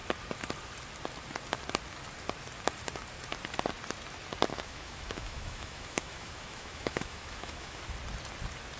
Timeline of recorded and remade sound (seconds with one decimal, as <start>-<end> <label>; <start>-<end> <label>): 0.0-4.5 recorded; 4.5-7.8 remade; 7.8-8.8 recorded